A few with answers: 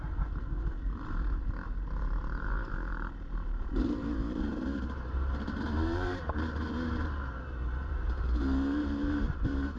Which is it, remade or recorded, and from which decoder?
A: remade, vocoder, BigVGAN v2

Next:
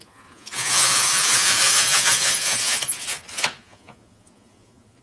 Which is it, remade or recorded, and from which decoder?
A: remade, vocoder, Vocos